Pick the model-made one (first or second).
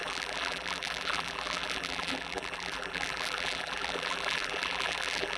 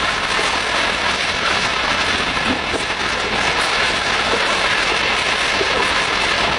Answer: first